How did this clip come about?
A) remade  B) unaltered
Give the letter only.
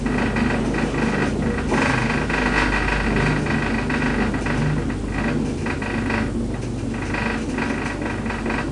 B